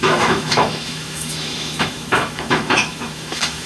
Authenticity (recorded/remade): remade